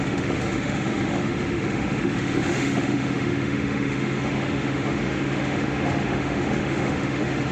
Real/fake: fake